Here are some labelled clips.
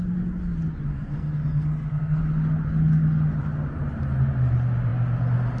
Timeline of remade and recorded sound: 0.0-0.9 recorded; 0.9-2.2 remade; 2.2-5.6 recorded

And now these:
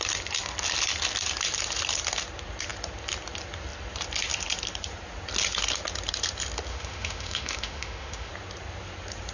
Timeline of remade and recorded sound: 0.0-6.7 recorded; 6.7-8.3 remade; 8.3-9.3 recorded

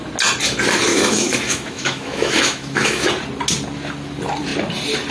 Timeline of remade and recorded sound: 0.0-0.9 recorded; 0.9-3.1 remade; 3.1-5.1 recorded

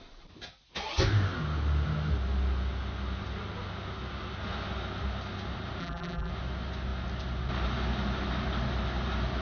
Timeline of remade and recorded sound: 0.0-5.8 recorded; 5.8-6.3 remade; 6.3-9.4 recorded

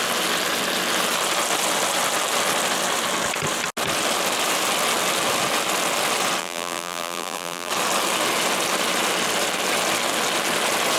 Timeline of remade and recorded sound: 0.0-6.4 recorded; 6.4-7.7 remade; 7.7-11.0 recorded

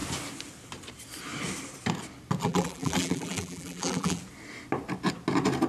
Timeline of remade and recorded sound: 0.0-2.4 recorded; 2.4-4.2 remade; 4.2-5.7 recorded

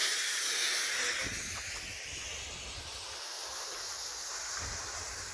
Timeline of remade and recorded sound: 0.0-5.3 recorded

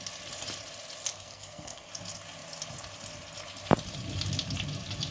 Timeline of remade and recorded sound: 0.0-1.1 recorded; 1.1-1.9 remade; 1.9-5.1 recorded